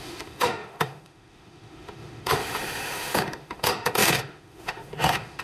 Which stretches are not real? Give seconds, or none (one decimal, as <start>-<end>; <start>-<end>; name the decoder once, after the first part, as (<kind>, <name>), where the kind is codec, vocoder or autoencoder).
0.0-5.4 (autoencoder, DAC-VAE)